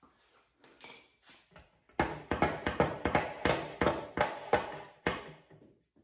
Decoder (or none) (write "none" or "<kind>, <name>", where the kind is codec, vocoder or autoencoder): none